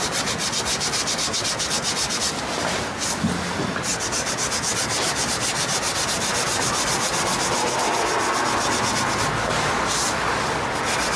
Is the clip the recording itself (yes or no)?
yes